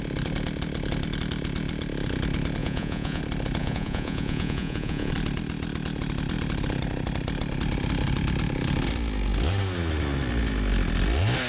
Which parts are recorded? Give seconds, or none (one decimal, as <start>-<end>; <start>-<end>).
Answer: 0.0-2.6; 3.2-3.6; 5.1-11.5